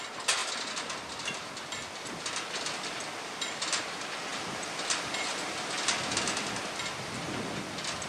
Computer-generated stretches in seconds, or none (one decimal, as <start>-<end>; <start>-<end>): none